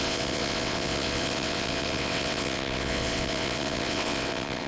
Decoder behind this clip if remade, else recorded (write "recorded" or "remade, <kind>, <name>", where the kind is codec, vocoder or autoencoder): remade, vocoder, WaveNeXt